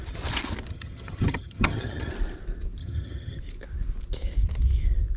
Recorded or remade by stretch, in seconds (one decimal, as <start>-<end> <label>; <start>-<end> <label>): 0.0-0.7 recorded; 0.7-2.1 remade; 2.1-2.8 recorded; 2.8-3.4 remade; 3.4-5.2 recorded